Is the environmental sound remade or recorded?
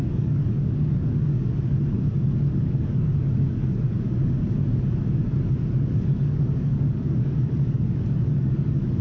remade